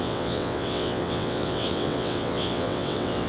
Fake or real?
fake